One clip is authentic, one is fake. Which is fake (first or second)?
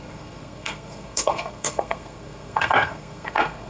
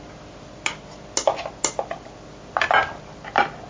first